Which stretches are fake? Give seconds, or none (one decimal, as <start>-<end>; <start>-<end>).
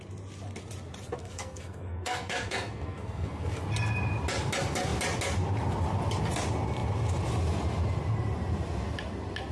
1.2-3.6